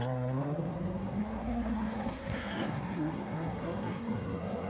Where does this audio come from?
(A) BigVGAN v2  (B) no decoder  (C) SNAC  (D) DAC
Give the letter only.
C